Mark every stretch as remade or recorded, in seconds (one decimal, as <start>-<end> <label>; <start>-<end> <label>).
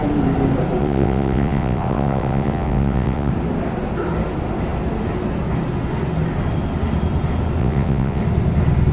0.0-0.8 recorded; 0.8-3.3 remade; 3.3-7.6 recorded; 7.6-8.2 remade; 8.2-8.9 recorded